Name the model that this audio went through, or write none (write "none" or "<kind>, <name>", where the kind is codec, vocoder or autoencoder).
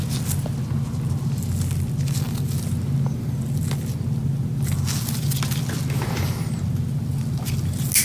none